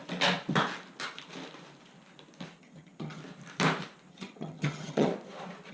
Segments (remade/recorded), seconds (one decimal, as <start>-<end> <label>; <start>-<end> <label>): 0.0-2.6 recorded; 2.6-3.2 remade; 3.2-4.1 recorded; 4.1-5.1 remade; 5.1-5.7 recorded